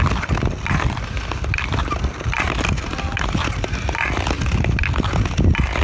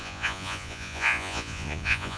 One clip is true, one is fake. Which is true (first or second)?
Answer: first